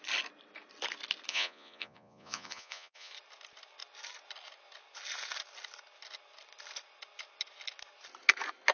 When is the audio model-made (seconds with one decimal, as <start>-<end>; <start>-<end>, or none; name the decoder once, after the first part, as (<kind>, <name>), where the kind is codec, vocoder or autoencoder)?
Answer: 1.3-3.1 (vocoder, Vocos)